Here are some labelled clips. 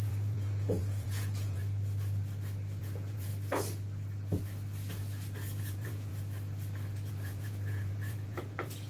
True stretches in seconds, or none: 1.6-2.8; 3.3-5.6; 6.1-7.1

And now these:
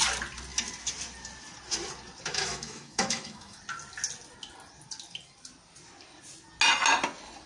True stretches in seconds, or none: 0.0-2.3; 3.6-7.5

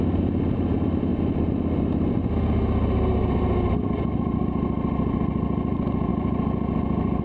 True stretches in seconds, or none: 0.0-7.2

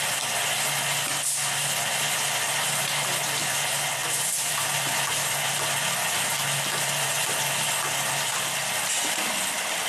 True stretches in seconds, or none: 0.0-9.9

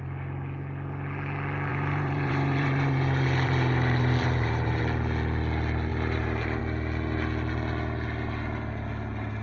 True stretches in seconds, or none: 0.0-1.7; 4.8-5.9; 6.6-9.4

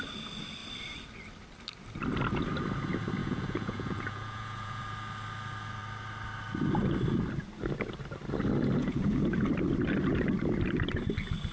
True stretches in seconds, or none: 0.0-3.2; 4.8-8.8; 9.5-11.5

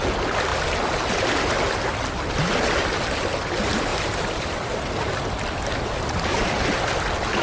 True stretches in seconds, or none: 0.0-7.4

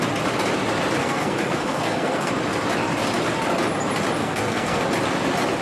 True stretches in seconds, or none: 0.0-1.0; 2.3-4.2; 4.8-5.6